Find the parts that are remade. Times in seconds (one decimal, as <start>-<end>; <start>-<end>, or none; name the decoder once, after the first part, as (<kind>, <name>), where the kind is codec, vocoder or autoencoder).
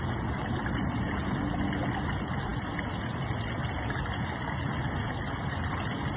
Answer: none